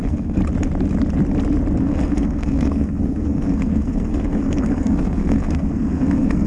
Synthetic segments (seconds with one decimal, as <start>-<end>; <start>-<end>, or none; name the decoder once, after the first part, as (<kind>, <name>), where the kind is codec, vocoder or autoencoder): 0.0-0.4 (codec, SNAC); 1.8-6.5